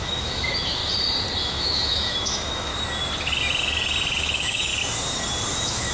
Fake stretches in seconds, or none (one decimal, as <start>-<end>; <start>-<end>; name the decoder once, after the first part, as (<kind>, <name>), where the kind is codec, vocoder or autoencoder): 0.0-0.8 (autoencoder, DAC-VAE); 1.4-2.7; 4.2-4.7; 5.5-5.9